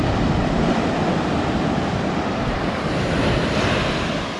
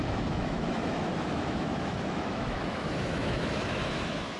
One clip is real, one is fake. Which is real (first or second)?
first